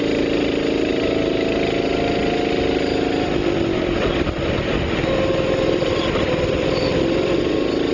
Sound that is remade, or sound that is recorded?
recorded